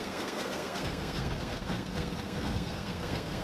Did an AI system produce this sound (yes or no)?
yes